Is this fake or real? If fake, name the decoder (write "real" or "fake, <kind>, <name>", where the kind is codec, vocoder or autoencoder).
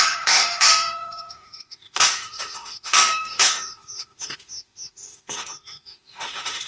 fake, autoencoder, DAC-VAE